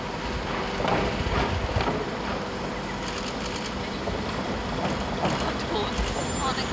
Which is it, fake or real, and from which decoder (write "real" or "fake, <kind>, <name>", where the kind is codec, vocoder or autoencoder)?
real